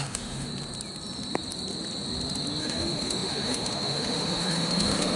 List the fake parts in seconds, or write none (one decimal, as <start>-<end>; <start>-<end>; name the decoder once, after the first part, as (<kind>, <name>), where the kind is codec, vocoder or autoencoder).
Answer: 0.0-0.5 (autoencoder, DAC-VAE); 2.6-5.2

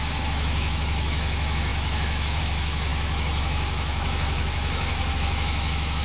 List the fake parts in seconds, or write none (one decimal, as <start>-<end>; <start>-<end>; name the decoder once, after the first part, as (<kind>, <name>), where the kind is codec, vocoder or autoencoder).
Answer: 0.0-6.0 (autoencoder, DAC-VAE)

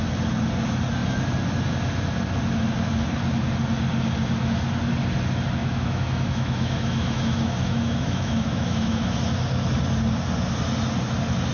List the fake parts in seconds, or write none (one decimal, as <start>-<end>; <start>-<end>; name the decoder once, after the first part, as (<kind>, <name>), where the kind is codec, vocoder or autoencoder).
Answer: 5.6-9.1 (autoencoder, DAC-VAE)

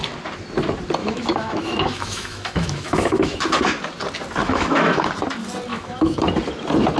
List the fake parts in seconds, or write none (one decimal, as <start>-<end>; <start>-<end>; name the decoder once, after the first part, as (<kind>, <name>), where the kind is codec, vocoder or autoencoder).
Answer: 1.0-3.4 (autoencoder, DAC-VAE); 4.4-5.1; 5.7-6.2

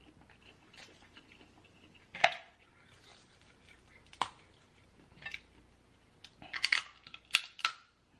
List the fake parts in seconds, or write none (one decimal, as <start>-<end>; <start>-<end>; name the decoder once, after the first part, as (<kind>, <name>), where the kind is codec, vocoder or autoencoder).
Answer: 2.2-2.7 (vocoder, Vocos)

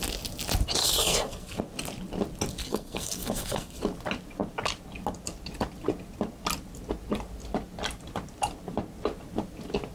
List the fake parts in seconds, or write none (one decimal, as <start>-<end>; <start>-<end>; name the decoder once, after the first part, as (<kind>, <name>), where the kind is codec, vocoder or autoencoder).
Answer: 0.8-1.6 (codec, SNAC); 2.6-3.8

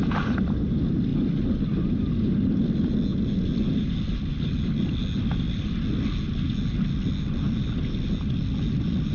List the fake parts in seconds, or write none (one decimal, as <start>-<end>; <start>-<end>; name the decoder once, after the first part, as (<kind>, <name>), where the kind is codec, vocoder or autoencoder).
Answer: none

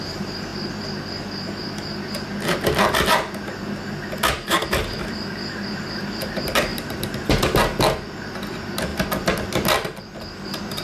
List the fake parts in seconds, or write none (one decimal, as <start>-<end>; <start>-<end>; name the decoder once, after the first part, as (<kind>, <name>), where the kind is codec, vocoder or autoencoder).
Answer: 0.0-0.5 (vocoder, BigVGAN v2); 5.7-6.7; 8.2-8.9; 10.0-10.8